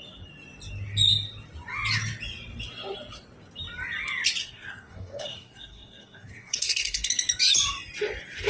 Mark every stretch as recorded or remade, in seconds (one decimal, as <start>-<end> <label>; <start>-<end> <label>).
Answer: 0.0-4.4 recorded; 4.4-7.1 remade; 7.1-8.5 recorded